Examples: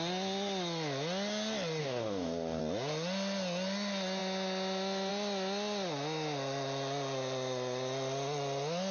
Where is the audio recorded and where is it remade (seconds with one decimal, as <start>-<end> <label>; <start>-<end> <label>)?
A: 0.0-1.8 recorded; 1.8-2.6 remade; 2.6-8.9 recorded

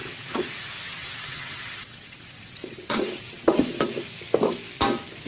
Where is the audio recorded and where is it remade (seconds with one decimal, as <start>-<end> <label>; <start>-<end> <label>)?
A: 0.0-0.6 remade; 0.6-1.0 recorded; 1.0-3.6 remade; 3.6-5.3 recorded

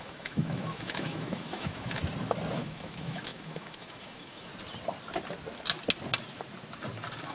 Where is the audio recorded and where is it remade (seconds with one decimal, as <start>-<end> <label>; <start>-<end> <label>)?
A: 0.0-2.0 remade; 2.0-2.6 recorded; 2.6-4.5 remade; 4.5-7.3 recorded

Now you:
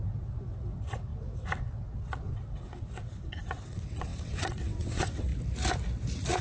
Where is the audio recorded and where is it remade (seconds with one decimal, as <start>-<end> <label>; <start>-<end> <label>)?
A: 0.0-5.3 remade; 5.3-6.4 recorded

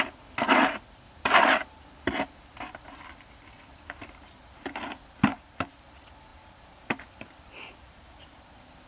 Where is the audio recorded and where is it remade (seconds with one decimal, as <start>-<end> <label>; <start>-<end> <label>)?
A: 0.0-5.3 recorded; 5.3-5.8 remade; 5.8-6.3 recorded; 6.3-8.5 remade; 8.5-8.9 recorded